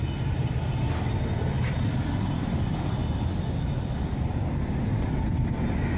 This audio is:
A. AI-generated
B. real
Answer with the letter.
B